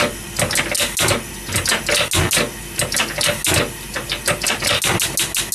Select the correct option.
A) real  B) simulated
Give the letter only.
A